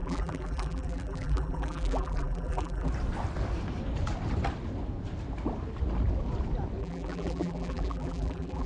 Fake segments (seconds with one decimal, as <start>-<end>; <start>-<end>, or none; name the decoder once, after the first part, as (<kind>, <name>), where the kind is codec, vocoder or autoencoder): 0.0-2.9 (vocoder, BigVGAN v2); 6.8-8.7